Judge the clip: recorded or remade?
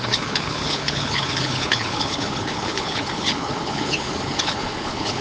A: remade